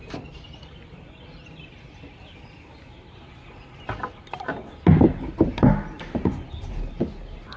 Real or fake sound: real